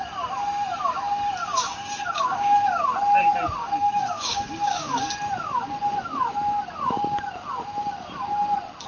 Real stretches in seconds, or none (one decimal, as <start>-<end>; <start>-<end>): 0.0-1.4; 2.8-3.6; 5.1-8.9